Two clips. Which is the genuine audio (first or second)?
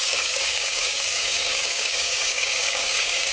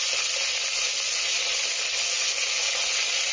second